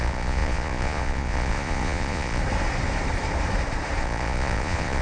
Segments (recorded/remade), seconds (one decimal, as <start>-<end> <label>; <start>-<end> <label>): 0.0-2.4 remade; 2.4-4.0 recorded; 4.0-5.0 remade